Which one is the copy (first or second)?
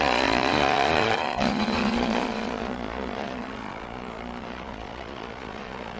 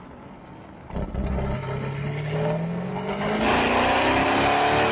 first